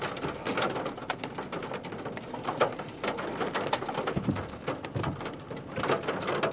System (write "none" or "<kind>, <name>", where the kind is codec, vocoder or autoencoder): none